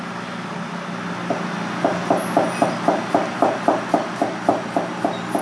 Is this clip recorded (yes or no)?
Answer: yes